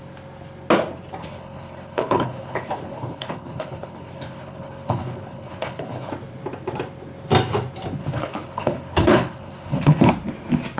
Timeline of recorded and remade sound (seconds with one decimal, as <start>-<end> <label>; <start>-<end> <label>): 0.0-1.2 recorded; 1.2-6.1 remade; 6.1-8.0 recorded; 8.0-10.1 remade; 10.1-10.8 recorded